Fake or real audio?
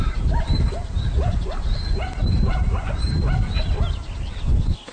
real